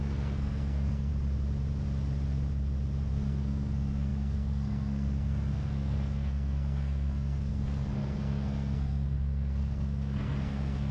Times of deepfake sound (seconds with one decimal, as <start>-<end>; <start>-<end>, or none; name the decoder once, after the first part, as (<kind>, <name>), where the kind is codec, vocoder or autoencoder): 0.0-1.1 (codec, SNAC); 3.1-10.9